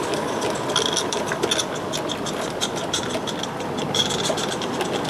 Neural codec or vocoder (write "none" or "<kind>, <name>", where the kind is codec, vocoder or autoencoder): none